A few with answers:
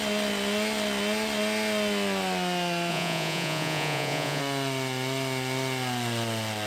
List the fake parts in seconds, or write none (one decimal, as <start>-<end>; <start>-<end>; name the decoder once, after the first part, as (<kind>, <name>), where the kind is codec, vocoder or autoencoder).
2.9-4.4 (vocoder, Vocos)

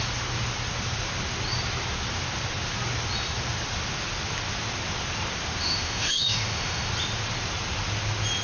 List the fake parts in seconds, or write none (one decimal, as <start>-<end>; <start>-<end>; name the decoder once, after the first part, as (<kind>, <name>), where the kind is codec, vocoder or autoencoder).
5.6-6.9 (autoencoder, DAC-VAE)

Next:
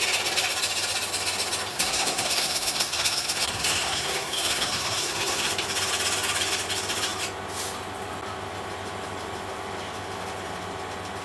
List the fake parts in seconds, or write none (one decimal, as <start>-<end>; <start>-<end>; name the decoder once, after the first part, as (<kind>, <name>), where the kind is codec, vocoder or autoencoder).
1.7-5.5 (codec, SNAC)

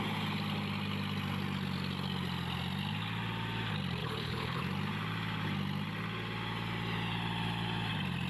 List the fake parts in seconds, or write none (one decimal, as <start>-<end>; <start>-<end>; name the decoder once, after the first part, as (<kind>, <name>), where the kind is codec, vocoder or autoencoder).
4.0-4.6 (codec, HILCodec)

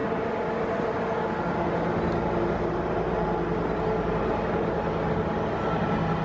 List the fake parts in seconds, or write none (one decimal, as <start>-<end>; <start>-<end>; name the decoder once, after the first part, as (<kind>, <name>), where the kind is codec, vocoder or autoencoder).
none

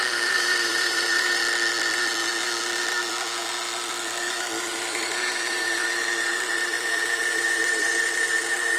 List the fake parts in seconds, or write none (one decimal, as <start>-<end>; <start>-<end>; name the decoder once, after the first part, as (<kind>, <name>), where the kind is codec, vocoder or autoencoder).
0.0-1.4 (vocoder, BigVGAN v2); 4.7-8.8

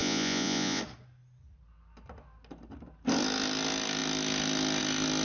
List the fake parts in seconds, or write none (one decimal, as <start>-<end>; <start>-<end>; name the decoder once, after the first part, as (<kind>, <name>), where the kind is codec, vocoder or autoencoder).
0.0-0.8 (vocoder, Vocos)

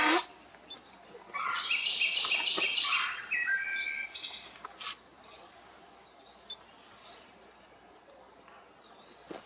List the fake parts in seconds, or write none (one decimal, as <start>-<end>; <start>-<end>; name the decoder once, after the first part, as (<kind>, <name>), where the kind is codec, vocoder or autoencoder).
none